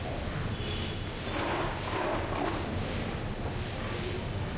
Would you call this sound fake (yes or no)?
no